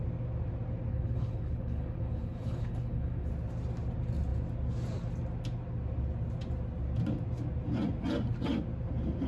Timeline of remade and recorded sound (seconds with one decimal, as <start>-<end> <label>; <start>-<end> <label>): 0.0-0.9 recorded; 0.9-3.3 remade; 3.3-9.3 recorded